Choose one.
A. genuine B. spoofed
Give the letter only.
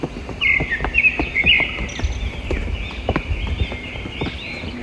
A